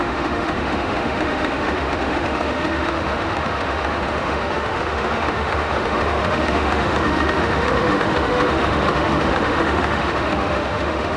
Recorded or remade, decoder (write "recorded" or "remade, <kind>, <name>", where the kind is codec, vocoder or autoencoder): remade, autoencoder, DAC-VAE